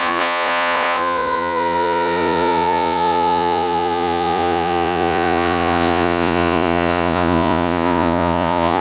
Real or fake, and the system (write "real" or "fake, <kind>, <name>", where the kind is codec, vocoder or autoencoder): fake, vocoder, Vocos